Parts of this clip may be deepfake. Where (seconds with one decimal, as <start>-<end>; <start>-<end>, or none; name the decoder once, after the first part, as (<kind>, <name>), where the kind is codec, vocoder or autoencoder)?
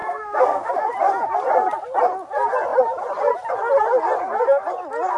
0.0-0.7 (codec, SNAC)